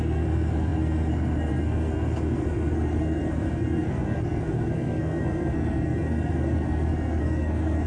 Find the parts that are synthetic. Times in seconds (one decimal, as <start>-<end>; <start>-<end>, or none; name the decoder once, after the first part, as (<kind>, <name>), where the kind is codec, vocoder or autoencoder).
0.0-7.9 (codec, SNAC)